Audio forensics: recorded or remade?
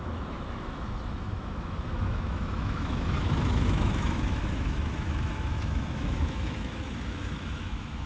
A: remade